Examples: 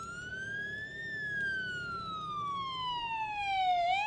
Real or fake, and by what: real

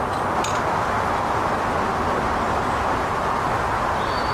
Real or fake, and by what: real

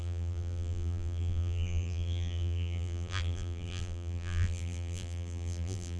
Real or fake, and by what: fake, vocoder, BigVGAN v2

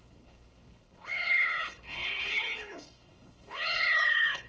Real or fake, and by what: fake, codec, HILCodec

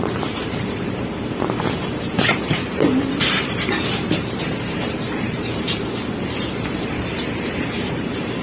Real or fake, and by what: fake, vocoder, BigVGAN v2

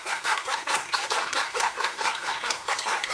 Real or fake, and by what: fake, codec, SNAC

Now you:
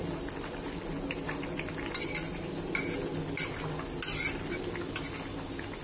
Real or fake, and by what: real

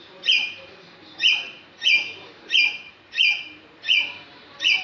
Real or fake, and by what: fake, vocoder, BigVGAN v2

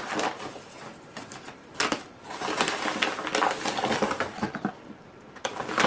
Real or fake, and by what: real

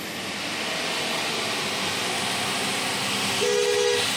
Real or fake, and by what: real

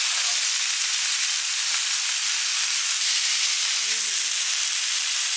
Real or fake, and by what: real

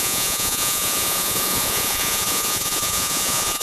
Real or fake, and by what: fake, vocoder, Vocos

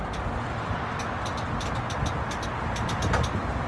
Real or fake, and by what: real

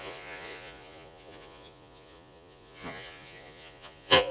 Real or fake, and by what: fake, vocoder, Vocos